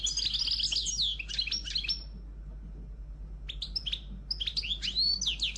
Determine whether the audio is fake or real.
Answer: real